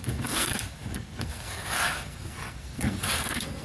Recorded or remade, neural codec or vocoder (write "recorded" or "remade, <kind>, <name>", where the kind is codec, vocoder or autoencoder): remade, codec, SNAC